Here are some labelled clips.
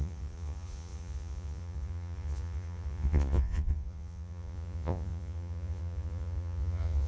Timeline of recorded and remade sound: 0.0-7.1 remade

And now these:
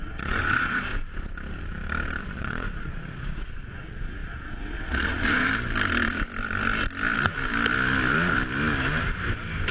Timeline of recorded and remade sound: 0.0-0.9 remade; 0.9-2.2 recorded; 2.2-5.5 remade; 5.5-9.7 recorded

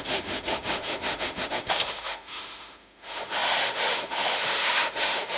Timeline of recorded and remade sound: 0.0-5.4 remade

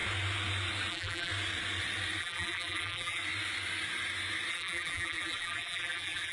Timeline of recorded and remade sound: 0.0-0.9 recorded; 0.9-1.3 remade; 1.3-2.2 recorded; 2.2-3.2 remade; 3.2-4.5 recorded; 4.5-6.3 remade

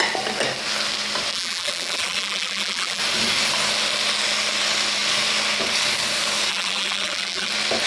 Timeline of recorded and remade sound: 0.0-1.3 recorded; 1.3-3.0 remade; 3.0-6.5 recorded; 6.5-7.5 remade; 7.5-7.9 recorded

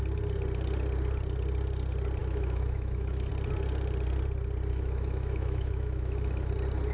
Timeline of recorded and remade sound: 0.0-2.2 recorded; 2.2-3.3 remade; 3.3-4.7 recorded; 4.7-6.5 remade; 6.5-6.9 recorded

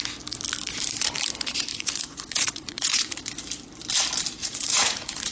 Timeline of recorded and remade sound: 0.0-1.7 recorded; 1.7-3.2 remade; 3.2-4.4 recorded; 4.4-5.3 remade